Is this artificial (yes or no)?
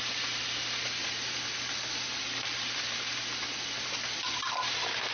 no